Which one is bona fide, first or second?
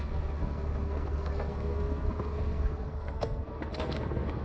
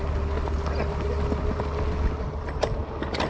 second